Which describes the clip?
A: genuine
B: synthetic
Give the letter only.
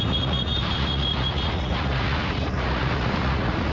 B